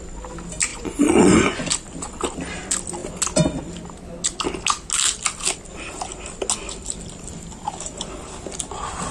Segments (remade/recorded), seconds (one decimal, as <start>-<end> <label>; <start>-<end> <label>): 0.0-0.7 recorded; 0.7-1.7 remade; 1.7-9.1 recorded